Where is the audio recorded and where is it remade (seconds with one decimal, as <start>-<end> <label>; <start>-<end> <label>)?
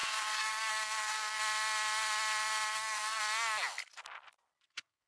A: 0.0-1.4 remade; 1.4-2.7 recorded; 2.7-3.2 remade; 3.2-4.6 recorded; 4.6-5.1 remade